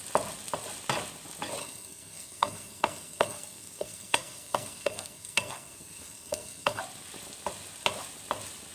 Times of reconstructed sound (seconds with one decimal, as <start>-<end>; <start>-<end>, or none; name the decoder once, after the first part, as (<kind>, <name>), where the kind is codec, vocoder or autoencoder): 1.6-6.8 (codec, SNAC)